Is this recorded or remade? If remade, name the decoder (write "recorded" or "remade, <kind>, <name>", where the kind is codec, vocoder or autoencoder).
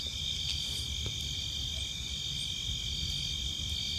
recorded